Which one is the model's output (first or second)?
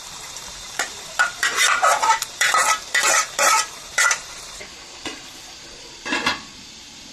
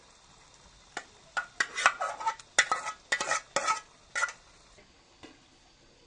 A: first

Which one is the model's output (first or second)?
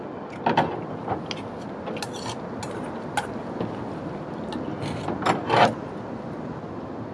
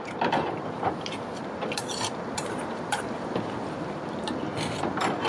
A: second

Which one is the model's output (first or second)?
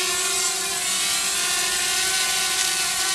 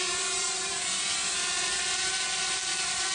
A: second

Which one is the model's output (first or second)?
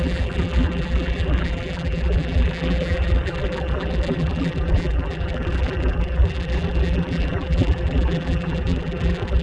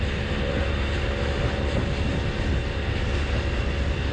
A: first